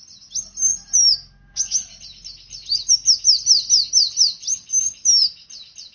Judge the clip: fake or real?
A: real